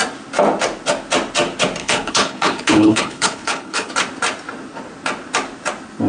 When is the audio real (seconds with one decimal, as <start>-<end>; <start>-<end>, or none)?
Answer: 0.0-1.8; 3.9-6.1